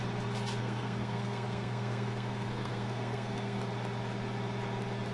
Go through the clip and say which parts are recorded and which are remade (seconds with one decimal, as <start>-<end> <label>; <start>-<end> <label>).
0.0-0.6 recorded; 0.6-3.6 remade; 3.6-5.1 recorded